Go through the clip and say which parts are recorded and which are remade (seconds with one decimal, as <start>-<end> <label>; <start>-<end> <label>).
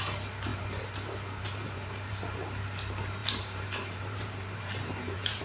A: 0.0-0.5 recorded; 0.5-2.1 remade; 2.1-3.2 recorded; 3.2-5.4 remade